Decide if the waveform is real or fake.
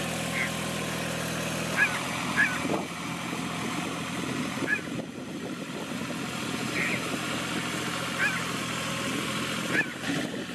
real